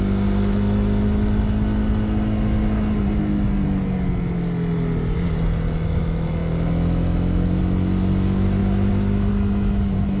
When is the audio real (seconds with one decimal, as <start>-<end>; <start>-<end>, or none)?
0.0-10.2